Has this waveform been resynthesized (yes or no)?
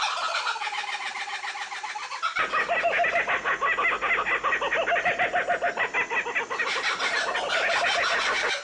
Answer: no